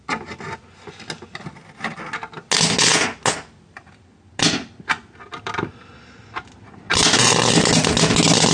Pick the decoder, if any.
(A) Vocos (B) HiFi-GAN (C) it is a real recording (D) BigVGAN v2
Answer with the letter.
C